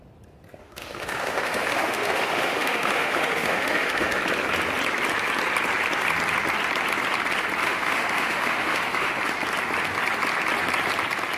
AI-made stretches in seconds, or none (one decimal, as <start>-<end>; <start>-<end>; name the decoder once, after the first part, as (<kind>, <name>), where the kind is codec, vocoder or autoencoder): 0.6-4.2 (autoencoder, DAC-VAE); 7.6-9.2